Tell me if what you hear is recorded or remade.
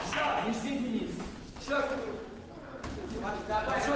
recorded